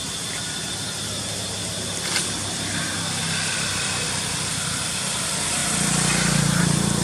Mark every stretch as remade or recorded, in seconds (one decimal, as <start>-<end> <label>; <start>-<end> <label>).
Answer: 0.0-7.0 recorded